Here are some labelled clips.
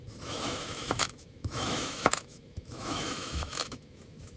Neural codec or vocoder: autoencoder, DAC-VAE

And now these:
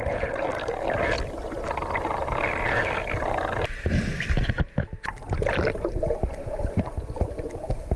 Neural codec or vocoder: none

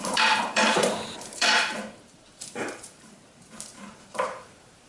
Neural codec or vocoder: vocoder, BigVGAN v2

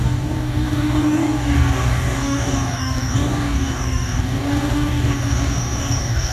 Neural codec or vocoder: codec, DAC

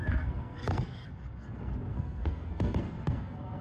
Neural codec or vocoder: codec, SNAC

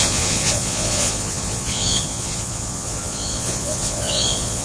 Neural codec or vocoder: vocoder, Vocos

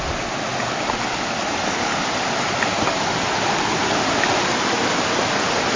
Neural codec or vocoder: none